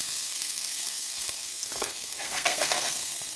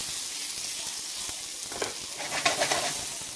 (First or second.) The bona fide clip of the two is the second